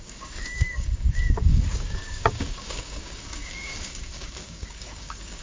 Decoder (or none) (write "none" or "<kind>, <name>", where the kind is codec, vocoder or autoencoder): codec, DAC